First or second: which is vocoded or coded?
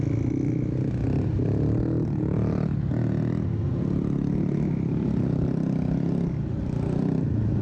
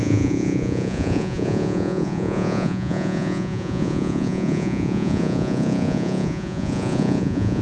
second